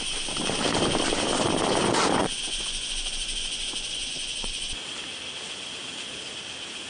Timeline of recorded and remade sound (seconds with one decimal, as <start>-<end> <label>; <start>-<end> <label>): 0.0-2.2 recorded; 2.2-4.7 remade; 4.7-6.9 recorded